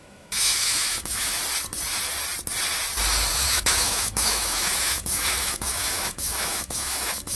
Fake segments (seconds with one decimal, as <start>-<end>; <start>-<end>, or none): 0.0-1.4; 3.3-7.3